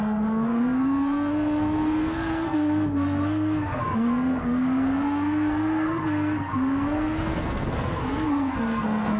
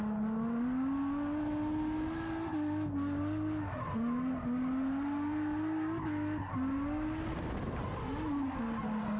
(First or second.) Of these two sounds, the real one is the second